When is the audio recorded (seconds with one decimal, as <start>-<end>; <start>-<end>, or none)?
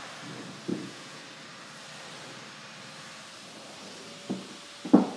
0.0-0.7; 1.2-5.2